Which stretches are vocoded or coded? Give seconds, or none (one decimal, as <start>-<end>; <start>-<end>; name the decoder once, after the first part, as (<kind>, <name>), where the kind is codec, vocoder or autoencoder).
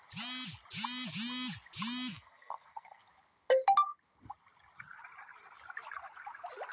2.1-3.0 (codec, SNAC)